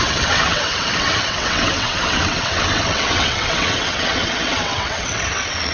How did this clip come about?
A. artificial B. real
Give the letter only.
A